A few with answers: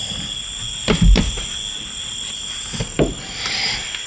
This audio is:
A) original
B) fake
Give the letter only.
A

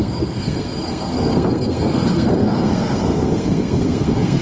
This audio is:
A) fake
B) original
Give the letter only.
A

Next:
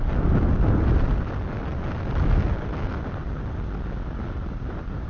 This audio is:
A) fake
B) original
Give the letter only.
B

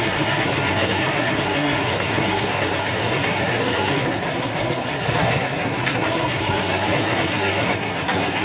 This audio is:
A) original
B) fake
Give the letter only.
B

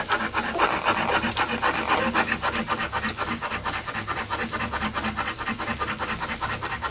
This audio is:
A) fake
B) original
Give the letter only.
B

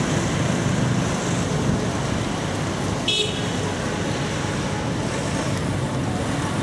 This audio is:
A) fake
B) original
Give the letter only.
B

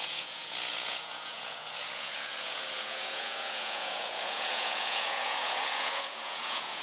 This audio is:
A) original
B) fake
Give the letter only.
B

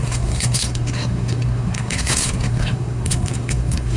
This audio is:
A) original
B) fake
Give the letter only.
B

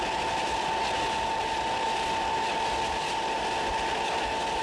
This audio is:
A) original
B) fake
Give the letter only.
A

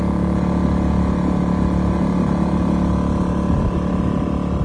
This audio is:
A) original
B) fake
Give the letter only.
A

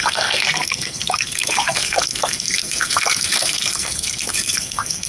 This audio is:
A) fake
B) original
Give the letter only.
A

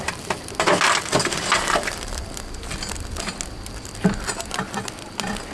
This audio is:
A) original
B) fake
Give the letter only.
A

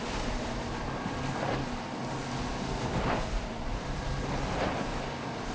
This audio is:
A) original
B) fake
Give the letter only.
A